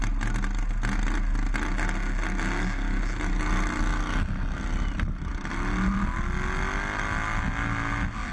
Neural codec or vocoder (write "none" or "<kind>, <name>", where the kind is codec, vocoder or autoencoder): none